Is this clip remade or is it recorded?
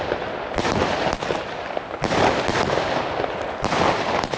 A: recorded